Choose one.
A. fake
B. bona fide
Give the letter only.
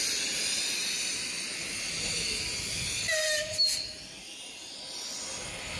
B